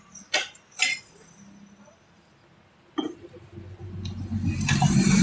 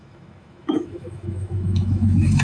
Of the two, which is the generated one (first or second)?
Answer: second